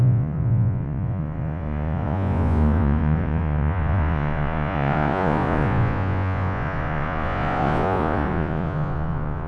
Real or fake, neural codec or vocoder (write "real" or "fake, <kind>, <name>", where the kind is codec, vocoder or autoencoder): fake, vocoder, Vocos